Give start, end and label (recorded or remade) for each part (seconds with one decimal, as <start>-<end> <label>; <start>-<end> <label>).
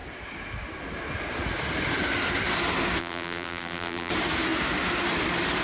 0.0-3.0 recorded; 3.0-4.1 remade; 4.1-5.6 recorded